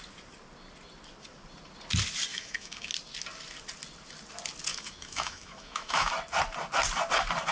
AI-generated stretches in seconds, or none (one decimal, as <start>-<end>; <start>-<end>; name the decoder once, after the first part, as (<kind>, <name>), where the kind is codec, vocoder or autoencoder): 2.3-2.9 (autoencoder, DAC-VAE); 4.7-6.1